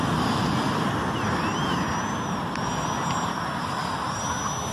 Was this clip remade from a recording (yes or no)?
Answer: no